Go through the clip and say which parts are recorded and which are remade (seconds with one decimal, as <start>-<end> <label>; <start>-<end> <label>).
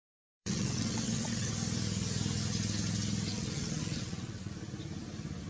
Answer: 0.0-1.5 remade; 1.5-3.3 recorded; 3.3-4.5 remade; 4.5-5.5 recorded